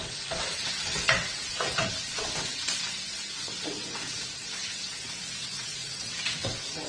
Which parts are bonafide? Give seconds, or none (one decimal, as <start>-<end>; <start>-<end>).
none